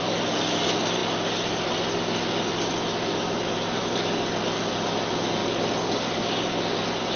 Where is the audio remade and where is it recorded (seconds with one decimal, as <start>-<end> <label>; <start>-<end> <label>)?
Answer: 0.0-7.2 recorded